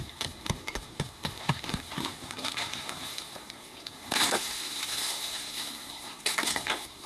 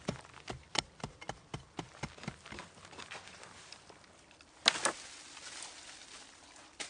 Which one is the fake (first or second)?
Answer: first